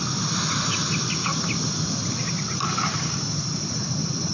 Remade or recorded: recorded